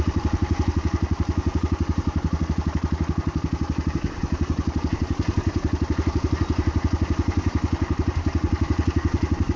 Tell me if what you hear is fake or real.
real